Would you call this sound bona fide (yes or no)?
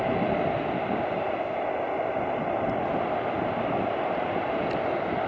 yes